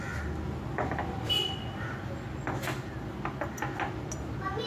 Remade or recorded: recorded